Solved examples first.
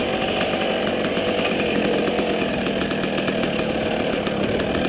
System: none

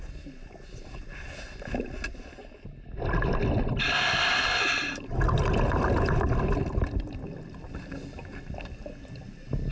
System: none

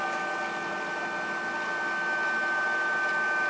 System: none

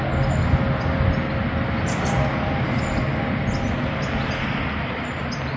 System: none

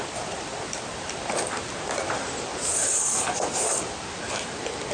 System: vocoder, BigVGAN v2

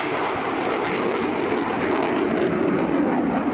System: none